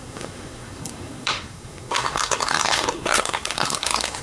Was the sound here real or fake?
fake